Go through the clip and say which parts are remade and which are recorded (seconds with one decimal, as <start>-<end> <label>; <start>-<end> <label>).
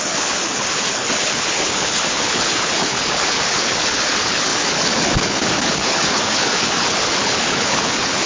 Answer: 0.0-8.3 remade